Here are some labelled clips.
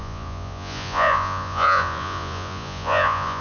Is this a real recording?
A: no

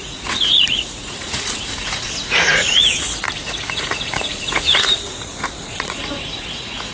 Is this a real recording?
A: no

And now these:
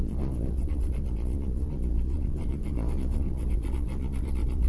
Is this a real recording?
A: no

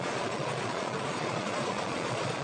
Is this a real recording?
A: no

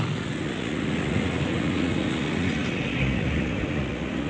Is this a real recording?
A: no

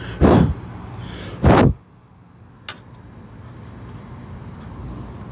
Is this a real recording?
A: yes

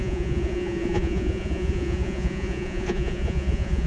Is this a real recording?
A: no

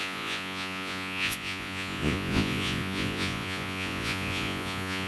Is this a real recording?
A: no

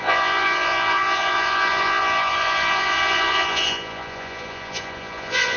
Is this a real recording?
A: no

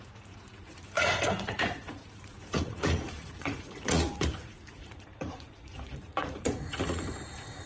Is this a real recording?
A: no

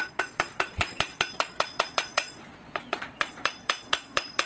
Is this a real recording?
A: no